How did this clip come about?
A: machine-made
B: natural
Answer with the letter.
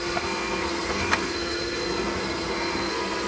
A